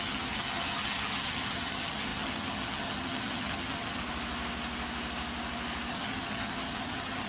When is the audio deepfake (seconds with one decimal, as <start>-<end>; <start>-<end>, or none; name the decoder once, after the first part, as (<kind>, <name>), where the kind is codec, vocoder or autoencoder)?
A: 0.0-4.0 (vocoder, HiFi-GAN); 5.9-7.3